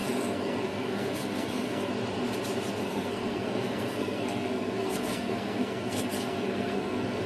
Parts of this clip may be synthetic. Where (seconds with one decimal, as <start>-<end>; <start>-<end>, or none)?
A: 0.0-1.9; 2.8-7.3